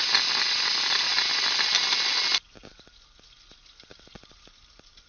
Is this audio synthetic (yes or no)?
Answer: no